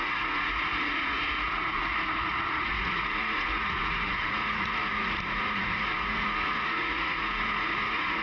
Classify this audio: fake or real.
fake